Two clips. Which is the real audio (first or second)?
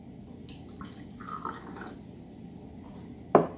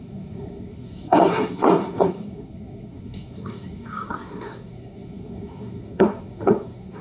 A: first